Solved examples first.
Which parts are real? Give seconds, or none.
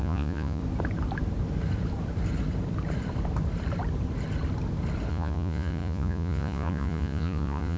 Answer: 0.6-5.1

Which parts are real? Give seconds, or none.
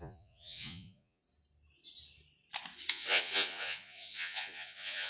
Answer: 1.2-2.9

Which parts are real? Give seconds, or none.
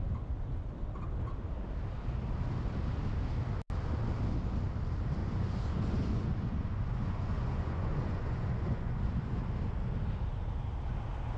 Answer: 0.0-5.2; 9.4-11.4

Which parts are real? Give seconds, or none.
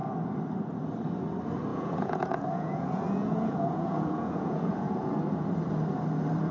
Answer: 0.0-1.7; 5.2-6.5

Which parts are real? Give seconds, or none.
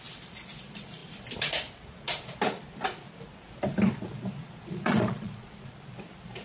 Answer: 0.0-4.4; 5.7-6.4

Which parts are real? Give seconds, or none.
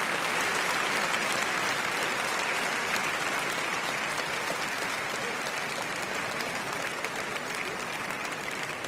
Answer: 0.0-8.9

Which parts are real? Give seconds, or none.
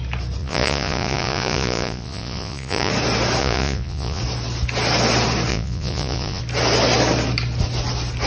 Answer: 0.0-0.4; 2.9-3.4; 4.2-5.5; 6.4-8.3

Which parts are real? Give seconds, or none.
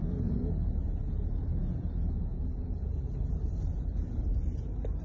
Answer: 3.0-5.0